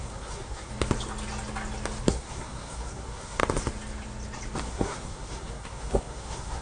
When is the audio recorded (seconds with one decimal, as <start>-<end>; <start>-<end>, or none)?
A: 0.7-2.0; 3.4-4.6